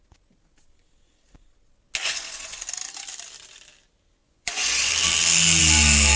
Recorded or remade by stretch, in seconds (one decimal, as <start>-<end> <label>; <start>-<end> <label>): 0.0-2.0 recorded; 2.0-2.6 remade; 2.6-4.2 recorded; 4.2-4.9 remade; 4.9-6.2 recorded

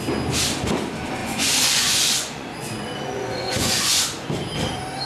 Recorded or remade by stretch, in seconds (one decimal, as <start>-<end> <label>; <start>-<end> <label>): 0.0-1.2 recorded; 1.2-4.3 remade; 4.3-5.1 recorded

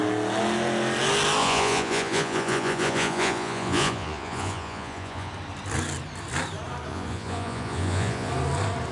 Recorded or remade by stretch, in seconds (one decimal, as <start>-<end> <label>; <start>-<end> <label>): 0.0-1.4 recorded; 1.4-5.3 remade; 5.3-6.9 recorded; 6.9-8.3 remade; 8.3-8.9 recorded

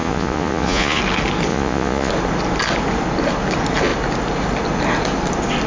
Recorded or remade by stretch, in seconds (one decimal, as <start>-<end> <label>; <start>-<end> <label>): 0.0-1.0 remade; 1.0-1.5 recorded; 1.5-2.1 remade; 2.1-5.7 recorded

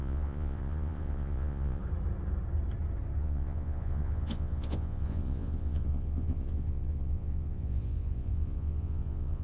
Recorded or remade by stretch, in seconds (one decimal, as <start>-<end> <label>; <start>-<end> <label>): 0.0-1.8 remade; 1.8-3.2 recorded; 3.2-9.4 remade

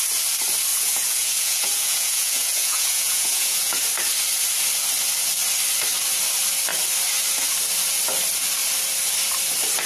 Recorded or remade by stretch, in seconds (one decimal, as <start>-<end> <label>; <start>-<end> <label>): 0.0-0.7 recorded; 0.7-3.8 remade; 3.8-9.9 recorded

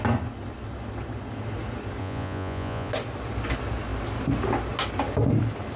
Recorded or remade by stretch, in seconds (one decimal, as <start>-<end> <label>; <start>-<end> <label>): 0.0-2.0 recorded; 2.0-2.9 remade; 2.9-5.8 recorded

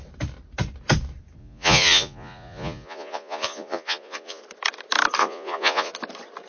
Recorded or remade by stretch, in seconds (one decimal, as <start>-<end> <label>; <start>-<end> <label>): 0.0-1.4 recorded; 1.4-4.4 remade; 4.4-5.2 recorded; 5.2-5.9 remade; 5.9-6.5 recorded